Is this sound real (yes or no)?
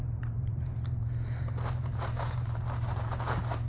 no